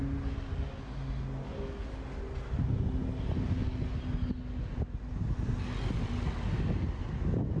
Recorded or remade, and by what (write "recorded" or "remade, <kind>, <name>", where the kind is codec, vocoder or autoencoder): recorded